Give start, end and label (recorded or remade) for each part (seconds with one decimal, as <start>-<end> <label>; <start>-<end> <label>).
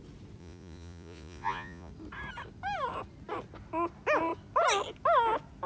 0.0-0.4 recorded; 0.4-1.9 remade; 1.9-5.7 recorded